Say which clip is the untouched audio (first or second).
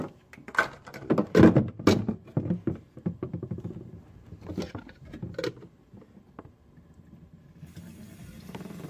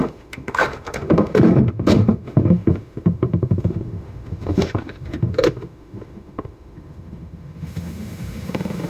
first